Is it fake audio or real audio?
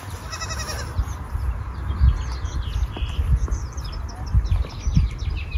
real